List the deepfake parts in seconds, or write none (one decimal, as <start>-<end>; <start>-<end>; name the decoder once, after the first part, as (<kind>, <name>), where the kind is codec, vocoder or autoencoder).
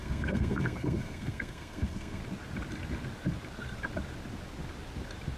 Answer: 0.0-2.2 (codec, SNAC)